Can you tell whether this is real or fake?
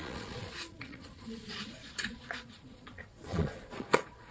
fake